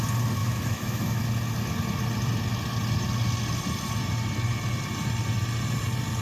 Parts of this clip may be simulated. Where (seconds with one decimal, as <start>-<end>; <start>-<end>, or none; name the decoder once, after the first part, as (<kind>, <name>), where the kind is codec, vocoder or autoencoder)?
0.4-1.2 (autoencoder, DAC-VAE)